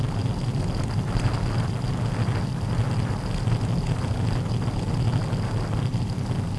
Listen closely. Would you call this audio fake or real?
real